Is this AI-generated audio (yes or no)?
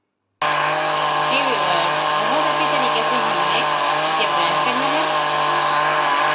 no